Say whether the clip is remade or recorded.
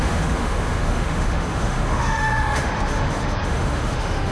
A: remade